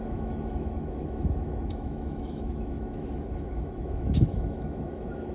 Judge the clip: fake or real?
fake